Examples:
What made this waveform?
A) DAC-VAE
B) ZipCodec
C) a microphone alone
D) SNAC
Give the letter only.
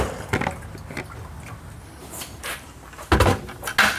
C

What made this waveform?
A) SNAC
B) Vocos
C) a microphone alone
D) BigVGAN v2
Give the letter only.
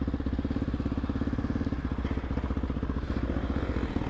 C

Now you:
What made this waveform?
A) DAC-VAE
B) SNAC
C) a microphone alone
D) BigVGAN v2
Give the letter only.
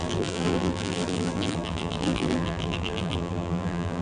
D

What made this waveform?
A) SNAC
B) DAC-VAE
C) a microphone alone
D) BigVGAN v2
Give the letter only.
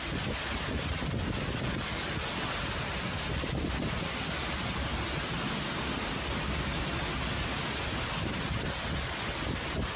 C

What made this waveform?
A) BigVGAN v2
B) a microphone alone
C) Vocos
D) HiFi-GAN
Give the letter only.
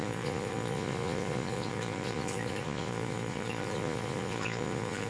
C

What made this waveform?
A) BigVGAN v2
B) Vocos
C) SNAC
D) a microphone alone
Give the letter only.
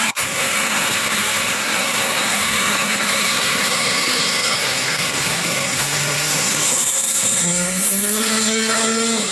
C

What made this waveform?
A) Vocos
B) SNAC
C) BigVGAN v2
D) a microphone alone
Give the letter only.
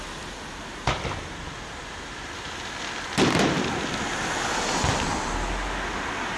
D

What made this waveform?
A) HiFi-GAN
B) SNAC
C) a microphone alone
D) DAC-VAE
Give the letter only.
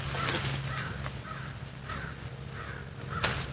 C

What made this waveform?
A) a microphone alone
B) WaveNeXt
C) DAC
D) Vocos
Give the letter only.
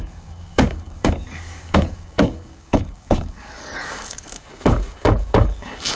C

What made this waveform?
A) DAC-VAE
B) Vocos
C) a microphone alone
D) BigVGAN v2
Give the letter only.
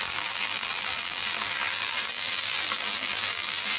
D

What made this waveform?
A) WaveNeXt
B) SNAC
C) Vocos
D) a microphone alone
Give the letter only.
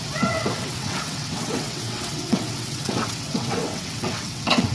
A